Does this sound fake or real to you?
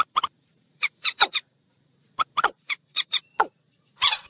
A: fake